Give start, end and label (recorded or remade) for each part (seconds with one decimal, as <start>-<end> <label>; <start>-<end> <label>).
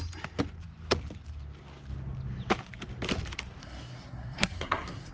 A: 0.0-3.6 recorded; 3.6-5.1 remade